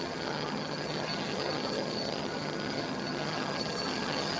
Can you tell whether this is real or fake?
fake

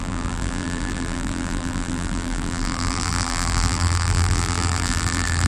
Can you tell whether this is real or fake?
fake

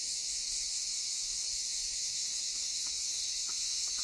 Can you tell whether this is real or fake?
fake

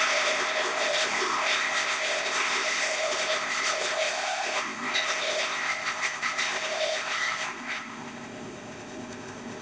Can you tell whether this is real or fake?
fake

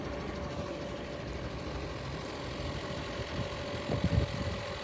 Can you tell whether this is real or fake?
real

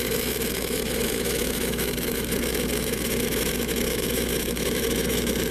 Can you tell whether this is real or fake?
fake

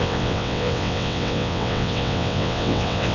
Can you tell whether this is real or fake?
fake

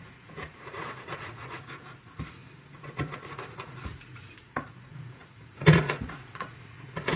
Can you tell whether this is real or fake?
fake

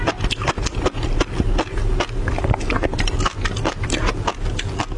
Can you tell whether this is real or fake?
real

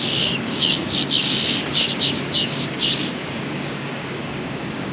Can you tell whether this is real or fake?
fake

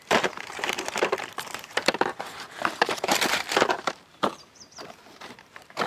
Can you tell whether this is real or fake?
fake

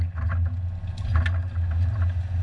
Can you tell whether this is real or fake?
real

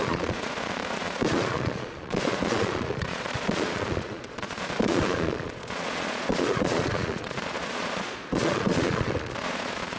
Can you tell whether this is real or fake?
fake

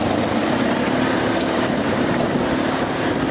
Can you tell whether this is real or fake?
real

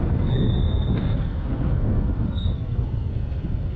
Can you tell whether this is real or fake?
fake